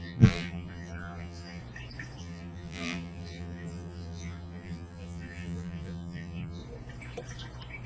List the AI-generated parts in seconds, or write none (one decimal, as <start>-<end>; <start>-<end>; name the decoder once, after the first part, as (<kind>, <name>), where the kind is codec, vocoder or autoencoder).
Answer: 0.0-1.6 (vocoder, BigVGAN v2); 2.2-6.6